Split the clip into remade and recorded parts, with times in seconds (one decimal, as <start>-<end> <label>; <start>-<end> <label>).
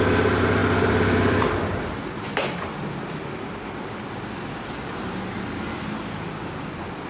0.0-0.6 recorded; 0.6-4.9 remade; 4.9-7.1 recorded